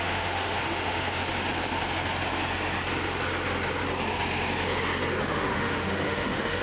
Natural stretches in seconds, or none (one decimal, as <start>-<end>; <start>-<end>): 1.2-5.2